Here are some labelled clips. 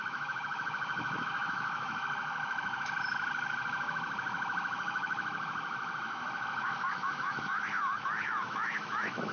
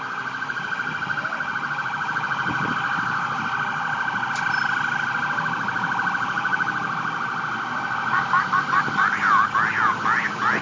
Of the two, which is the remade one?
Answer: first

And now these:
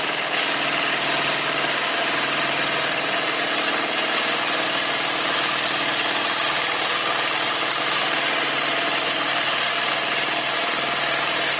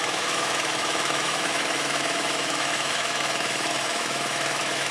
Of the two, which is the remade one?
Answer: second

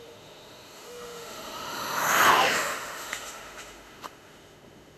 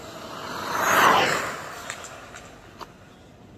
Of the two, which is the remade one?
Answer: first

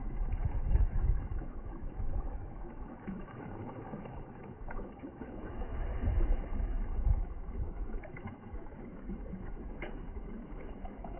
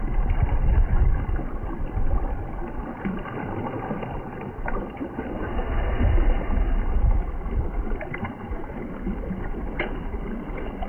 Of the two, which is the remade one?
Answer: first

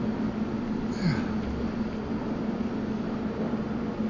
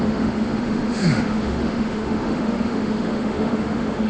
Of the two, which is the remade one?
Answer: second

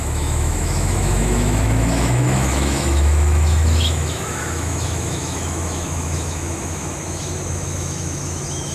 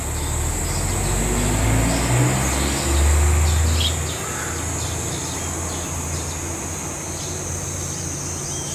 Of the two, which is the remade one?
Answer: first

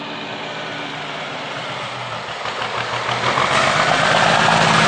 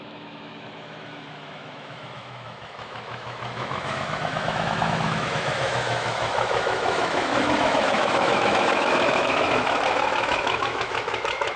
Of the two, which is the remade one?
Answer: second